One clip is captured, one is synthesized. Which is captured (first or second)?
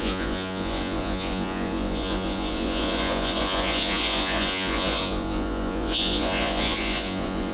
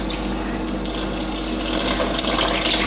second